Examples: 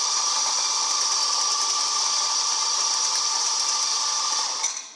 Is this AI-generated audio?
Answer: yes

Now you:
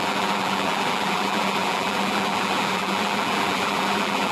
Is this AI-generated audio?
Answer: yes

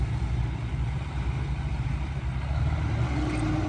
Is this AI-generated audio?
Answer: no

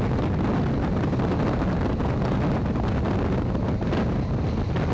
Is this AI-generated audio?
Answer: no